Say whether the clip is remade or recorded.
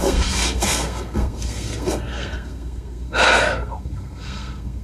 remade